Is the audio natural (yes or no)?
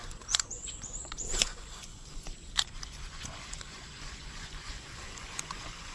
no